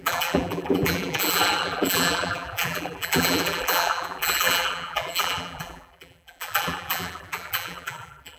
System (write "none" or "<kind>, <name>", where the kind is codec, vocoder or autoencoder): vocoder, BigVGAN v2